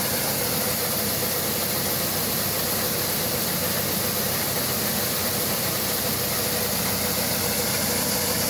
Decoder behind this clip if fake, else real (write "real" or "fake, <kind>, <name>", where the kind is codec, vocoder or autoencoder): real